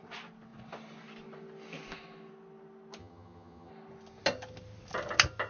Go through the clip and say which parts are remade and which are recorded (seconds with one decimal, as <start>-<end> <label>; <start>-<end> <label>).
0.0-3.0 recorded; 3.0-3.7 remade; 3.7-5.5 recorded